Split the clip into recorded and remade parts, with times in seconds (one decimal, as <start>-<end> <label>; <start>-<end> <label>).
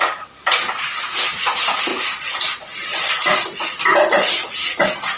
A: 0.0-5.2 recorded